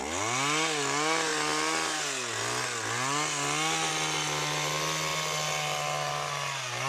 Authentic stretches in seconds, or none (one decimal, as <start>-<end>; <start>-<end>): 0.0-6.9